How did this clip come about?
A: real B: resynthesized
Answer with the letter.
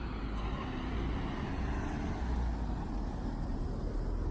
A